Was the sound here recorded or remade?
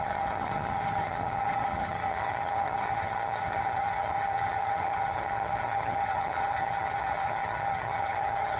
remade